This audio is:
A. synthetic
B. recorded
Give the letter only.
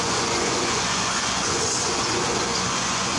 A